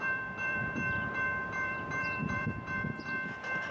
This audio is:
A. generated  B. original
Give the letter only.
A